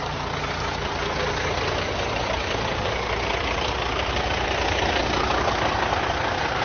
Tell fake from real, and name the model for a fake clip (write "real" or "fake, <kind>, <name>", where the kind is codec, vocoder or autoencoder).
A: real